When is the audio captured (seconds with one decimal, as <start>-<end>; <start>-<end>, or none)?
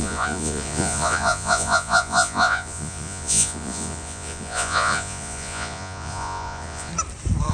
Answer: 6.9-7.5